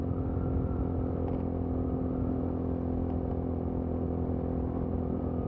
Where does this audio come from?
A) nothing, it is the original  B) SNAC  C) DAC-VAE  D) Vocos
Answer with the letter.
A